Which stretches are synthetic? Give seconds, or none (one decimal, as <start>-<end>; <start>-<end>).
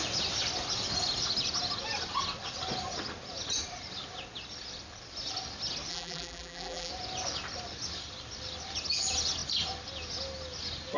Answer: 5.9-6.9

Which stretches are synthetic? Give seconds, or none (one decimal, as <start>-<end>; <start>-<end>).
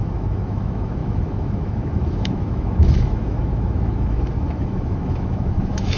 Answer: 0.0-6.0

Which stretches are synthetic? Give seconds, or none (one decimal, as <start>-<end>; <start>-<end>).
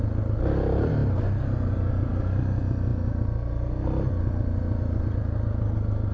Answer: none